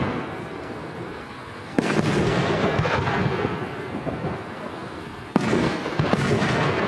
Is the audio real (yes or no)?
no